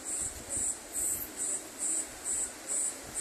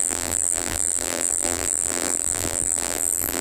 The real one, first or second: first